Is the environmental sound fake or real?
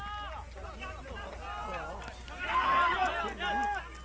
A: real